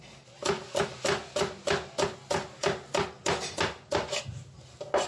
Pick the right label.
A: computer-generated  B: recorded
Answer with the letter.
B